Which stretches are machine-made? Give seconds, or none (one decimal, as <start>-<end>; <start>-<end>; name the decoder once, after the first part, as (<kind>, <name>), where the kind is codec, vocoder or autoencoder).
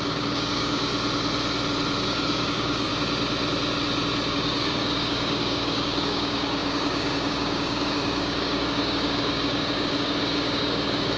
0.0-0.9 (codec, DAC); 2.0-2.9; 4.3-11.2